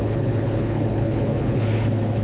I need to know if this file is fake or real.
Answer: fake